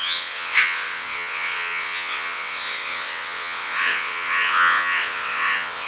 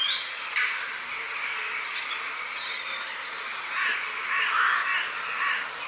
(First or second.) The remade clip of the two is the first